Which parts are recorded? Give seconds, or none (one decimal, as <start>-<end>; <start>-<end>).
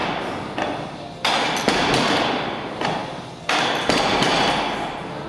0.0-1.7; 3.0-5.3